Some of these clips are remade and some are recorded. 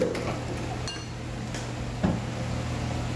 recorded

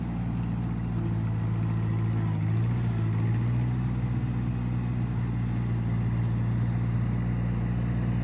recorded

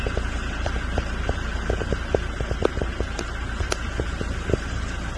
recorded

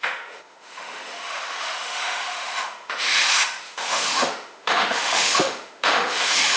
remade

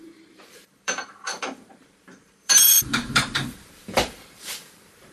remade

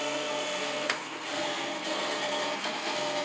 remade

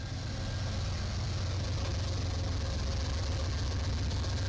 recorded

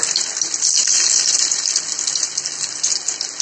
recorded